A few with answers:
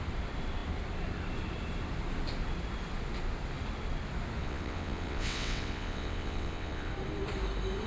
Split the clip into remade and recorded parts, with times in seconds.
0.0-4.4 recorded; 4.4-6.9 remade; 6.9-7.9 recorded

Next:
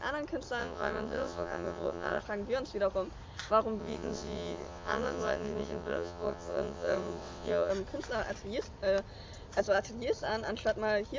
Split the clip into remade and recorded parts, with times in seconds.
0.0-0.6 recorded; 0.6-2.2 remade; 2.2-3.8 recorded; 3.8-7.7 remade; 7.7-11.2 recorded

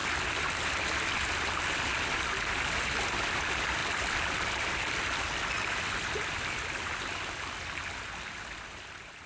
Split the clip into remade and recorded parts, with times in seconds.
0.0-9.3 recorded

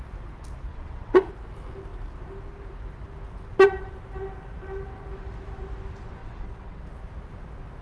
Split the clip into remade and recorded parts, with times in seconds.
0.0-0.7 recorded; 0.7-1.3 remade; 1.3-6.2 recorded; 6.2-6.8 remade; 6.8-7.8 recorded

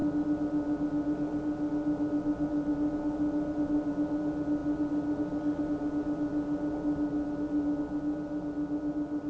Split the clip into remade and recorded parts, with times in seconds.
0.0-9.3 recorded